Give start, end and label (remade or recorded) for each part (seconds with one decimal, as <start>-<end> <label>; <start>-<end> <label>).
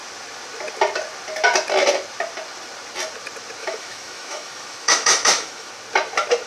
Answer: 0.0-3.6 recorded; 3.6-5.7 remade; 5.7-6.5 recorded